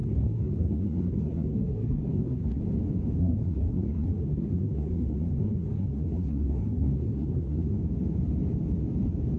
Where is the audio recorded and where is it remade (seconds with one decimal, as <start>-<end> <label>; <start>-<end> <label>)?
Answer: 0.0-2.6 remade; 2.6-3.2 recorded; 3.2-7.8 remade; 7.8-9.4 recorded